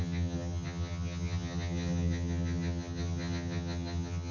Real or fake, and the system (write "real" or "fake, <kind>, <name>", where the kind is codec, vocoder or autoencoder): fake, vocoder, HiFi-GAN